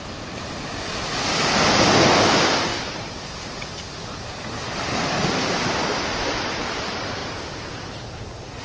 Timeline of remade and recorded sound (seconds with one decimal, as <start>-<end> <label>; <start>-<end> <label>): 0.0-8.6 recorded